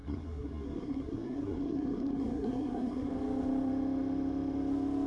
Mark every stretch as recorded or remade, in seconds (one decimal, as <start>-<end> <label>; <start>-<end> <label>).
0.0-3.1 remade; 3.1-5.1 recorded